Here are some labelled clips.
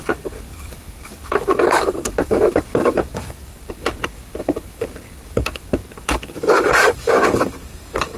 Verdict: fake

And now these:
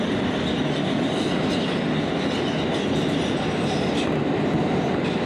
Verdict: real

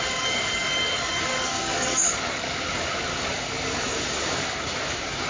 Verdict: fake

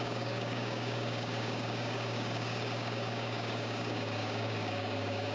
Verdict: fake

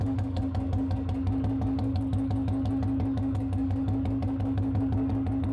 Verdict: fake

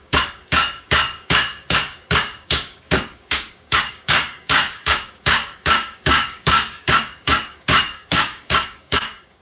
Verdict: fake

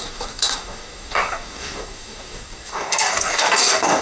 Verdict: fake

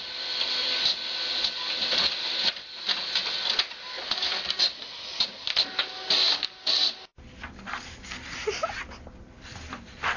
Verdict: real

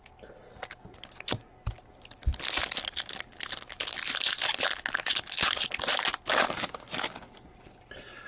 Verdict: real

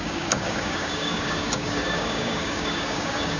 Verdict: fake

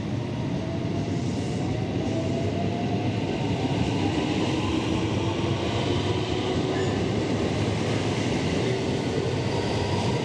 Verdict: real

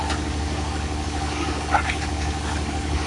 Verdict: fake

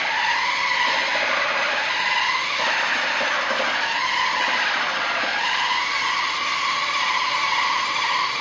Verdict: real